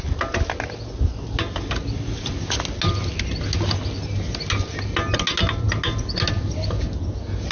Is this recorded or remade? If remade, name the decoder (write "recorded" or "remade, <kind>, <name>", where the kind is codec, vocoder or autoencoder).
recorded